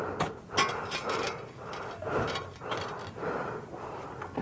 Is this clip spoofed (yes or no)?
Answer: no